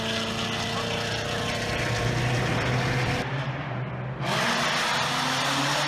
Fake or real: real